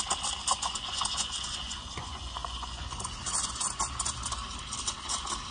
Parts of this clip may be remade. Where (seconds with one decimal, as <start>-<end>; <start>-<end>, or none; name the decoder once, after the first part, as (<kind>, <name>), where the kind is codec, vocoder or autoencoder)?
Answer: 0.5-3.8 (vocoder, Vocos)